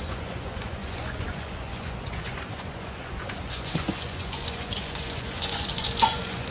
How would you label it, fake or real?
fake